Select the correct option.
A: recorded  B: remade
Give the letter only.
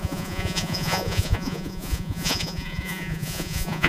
B